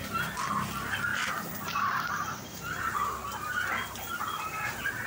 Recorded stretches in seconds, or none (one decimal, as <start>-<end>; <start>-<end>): 0.0-1.1; 2.8-5.1